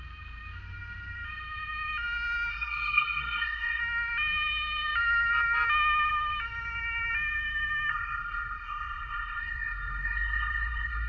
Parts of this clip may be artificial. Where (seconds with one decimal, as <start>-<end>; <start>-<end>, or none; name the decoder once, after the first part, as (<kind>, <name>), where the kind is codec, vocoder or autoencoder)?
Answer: 2.5-3.8 (codec, SNAC); 7.9-11.1